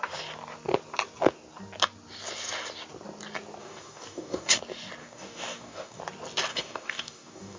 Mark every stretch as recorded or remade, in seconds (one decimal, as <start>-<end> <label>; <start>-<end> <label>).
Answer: 0.0-3.6 recorded; 3.6-4.6 remade; 4.6-5.0 recorded; 5.0-6.0 remade; 6.0-6.5 recorded; 6.5-7.6 remade

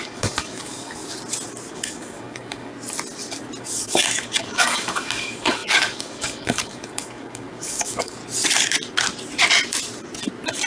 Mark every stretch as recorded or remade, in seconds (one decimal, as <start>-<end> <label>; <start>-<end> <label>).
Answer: 0.0-1.0 remade; 1.0-1.7 recorded; 1.7-2.7 remade; 2.7-3.6 recorded; 3.6-8.2 remade; 8.2-10.7 recorded

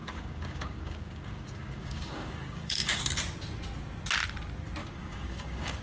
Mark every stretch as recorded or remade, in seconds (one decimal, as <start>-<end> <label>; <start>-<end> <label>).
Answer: 0.0-3.0 remade; 3.0-4.8 recorded; 4.8-5.8 remade

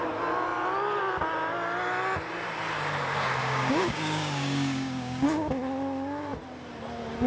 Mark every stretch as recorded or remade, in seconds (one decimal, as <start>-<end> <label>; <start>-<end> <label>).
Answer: 0.0-3.4 recorded; 3.4-5.5 remade; 5.5-7.3 recorded

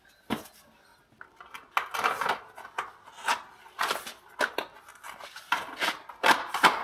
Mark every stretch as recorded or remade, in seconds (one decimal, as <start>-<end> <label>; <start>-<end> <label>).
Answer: 0.0-6.8 recorded

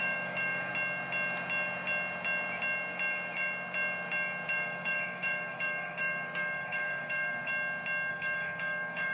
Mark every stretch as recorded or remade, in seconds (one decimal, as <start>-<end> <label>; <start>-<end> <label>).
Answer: 0.0-0.7 remade; 0.7-4.5 recorded; 4.5-7.5 remade; 7.5-8.1 recorded; 8.1-9.1 remade

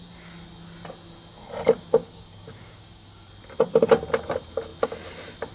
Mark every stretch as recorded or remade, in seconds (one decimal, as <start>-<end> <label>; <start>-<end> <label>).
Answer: 0.0-2.0 recorded; 2.0-3.3 remade; 3.3-5.5 recorded

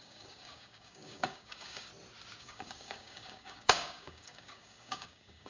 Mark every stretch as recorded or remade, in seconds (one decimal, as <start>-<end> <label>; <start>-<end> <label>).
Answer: 0.0-1.9 remade; 1.9-2.4 recorded; 2.4-5.5 remade